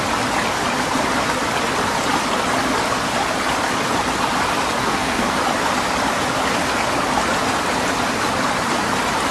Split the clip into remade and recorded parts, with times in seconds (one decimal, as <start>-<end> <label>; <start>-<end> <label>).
0.0-4.8 recorded; 4.8-5.4 remade; 5.4-9.3 recorded